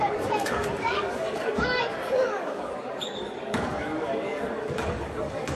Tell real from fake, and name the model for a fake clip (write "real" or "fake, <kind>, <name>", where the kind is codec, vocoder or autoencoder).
fake, codec, DAC